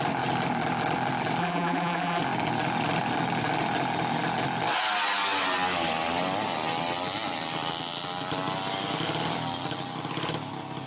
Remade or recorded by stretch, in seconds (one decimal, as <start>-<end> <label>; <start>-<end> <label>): 0.0-1.4 recorded; 1.4-2.2 remade; 2.2-10.9 recorded